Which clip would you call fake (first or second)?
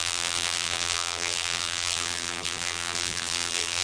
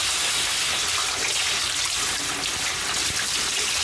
first